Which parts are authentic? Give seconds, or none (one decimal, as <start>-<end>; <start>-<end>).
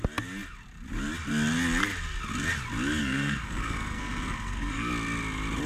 0.0-3.0; 4.9-5.7